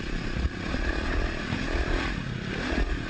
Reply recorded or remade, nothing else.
remade